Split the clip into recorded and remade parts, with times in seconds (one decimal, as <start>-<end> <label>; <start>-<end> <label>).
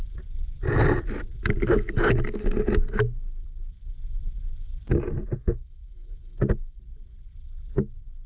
0.0-5.4 recorded; 5.4-6.8 remade; 6.8-8.3 recorded